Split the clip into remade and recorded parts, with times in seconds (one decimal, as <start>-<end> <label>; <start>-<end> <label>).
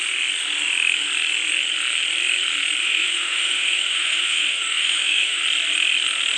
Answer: 0.0-2.8 recorded; 2.8-5.4 remade; 5.4-6.4 recorded